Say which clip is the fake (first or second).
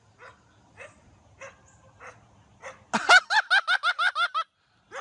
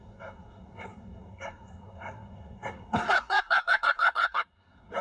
second